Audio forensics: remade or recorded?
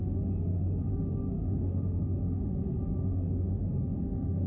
remade